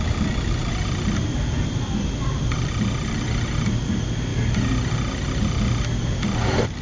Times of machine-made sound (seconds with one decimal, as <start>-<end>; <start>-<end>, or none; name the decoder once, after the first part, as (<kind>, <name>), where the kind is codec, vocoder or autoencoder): none